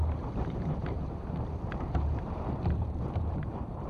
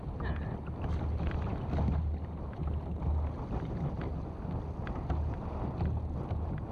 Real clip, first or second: second